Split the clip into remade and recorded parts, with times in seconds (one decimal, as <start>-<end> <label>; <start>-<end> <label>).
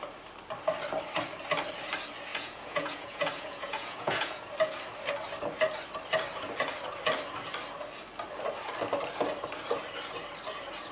0.0-2.3 recorded; 2.3-4.5 remade; 4.5-10.9 recorded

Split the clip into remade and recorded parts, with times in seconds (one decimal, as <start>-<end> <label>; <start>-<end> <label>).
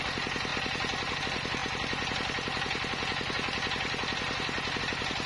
0.0-5.3 recorded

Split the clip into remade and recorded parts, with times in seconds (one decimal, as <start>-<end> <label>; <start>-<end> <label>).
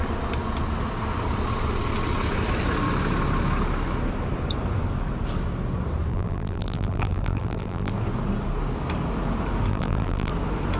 0.0-6.1 recorded; 6.1-7.9 remade; 7.9-9.7 recorded; 9.7-10.3 remade; 10.3-10.8 recorded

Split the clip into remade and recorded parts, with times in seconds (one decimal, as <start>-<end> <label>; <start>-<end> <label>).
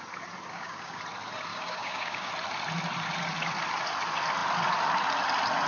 0.0-0.5 recorded; 0.5-1.0 remade; 1.0-1.5 recorded; 1.5-2.3 remade; 2.3-5.7 recorded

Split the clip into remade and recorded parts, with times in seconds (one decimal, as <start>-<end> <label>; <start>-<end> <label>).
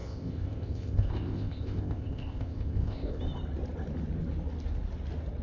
0.0-3.2 remade; 3.2-5.4 recorded